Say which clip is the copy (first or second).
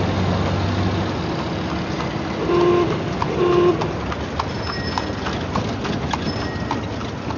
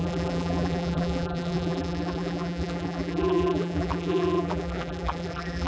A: second